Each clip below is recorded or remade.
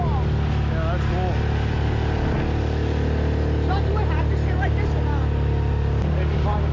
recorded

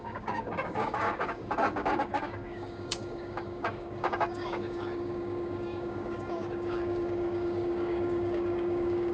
remade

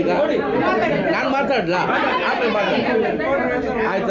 recorded